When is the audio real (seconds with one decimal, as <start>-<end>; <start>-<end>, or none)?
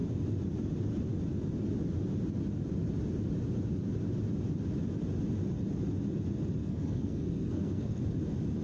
0.0-6.6; 8.0-8.6